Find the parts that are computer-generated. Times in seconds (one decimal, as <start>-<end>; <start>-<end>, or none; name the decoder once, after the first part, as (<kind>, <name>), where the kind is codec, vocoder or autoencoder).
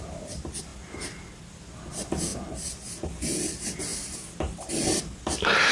none